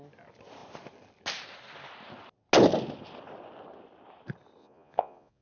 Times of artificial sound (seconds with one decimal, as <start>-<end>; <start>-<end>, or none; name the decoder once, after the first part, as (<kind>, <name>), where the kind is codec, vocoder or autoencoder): 4.6-5.4 (vocoder, Vocos)